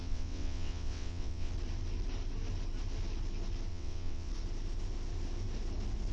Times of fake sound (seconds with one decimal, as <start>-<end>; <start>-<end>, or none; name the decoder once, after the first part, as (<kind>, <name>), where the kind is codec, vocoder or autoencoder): 0.0-1.5 (vocoder, WaveNeXt); 3.7-4.3